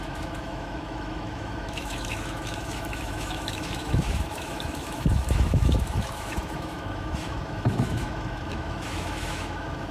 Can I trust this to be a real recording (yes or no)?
no